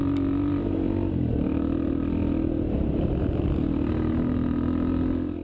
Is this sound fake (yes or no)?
no